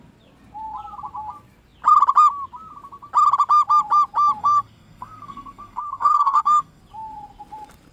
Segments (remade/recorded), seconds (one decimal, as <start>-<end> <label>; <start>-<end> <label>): 0.0-4.4 recorded; 4.4-6.8 remade; 6.8-7.9 recorded